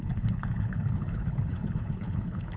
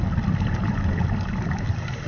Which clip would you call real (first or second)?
second